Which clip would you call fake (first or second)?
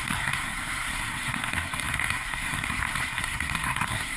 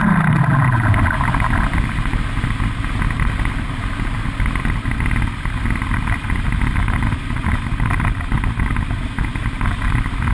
first